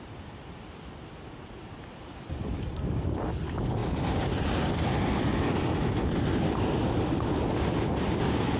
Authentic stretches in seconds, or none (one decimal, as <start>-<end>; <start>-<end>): 0.0-8.6